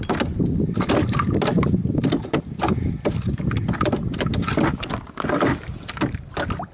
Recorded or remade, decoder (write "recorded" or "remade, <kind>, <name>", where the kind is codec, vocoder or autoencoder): recorded